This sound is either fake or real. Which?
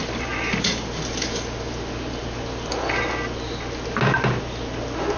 real